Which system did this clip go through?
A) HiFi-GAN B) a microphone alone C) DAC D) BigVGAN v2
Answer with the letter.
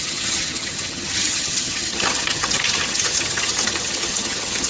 A